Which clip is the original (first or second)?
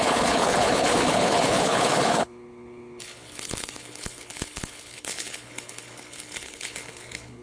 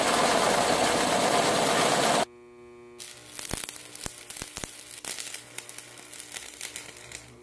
second